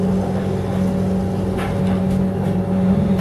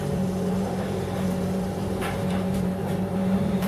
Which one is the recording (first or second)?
first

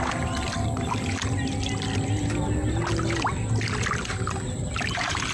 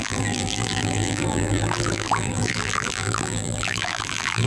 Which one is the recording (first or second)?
first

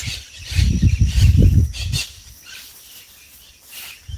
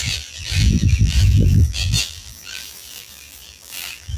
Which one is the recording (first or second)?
first